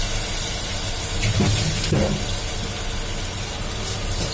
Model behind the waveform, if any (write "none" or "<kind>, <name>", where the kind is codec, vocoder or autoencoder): none